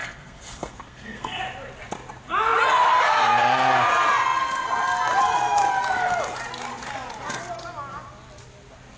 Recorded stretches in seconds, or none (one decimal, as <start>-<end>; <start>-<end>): 1.4-9.0